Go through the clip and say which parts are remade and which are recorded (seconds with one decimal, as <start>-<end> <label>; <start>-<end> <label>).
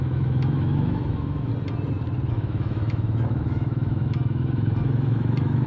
0.0-1.5 remade; 1.5-2.3 recorded; 2.3-5.7 remade